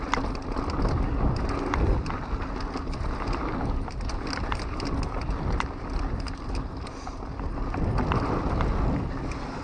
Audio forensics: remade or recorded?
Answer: recorded